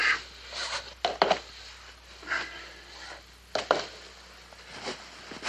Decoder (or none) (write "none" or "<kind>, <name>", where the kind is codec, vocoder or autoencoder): none